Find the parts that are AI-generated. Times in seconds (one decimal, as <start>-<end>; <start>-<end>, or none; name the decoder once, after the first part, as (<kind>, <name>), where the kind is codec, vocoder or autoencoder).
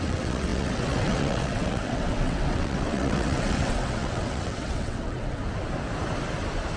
0.0-5.4 (vocoder, WaveNeXt)